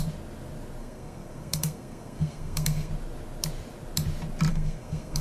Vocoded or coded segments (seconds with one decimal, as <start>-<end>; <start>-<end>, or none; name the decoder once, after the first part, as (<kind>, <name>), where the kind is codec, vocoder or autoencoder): 0.8-2.9 (codec, SNAC); 4.5-5.2